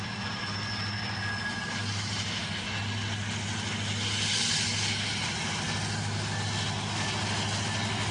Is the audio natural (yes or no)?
yes